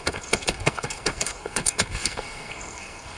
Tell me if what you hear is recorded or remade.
remade